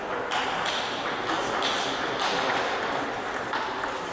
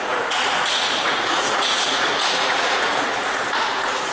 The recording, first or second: first